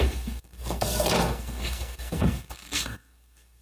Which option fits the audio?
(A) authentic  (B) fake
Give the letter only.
B